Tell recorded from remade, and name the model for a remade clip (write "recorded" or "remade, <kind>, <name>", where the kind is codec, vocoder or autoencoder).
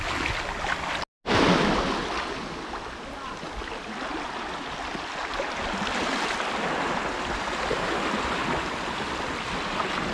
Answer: recorded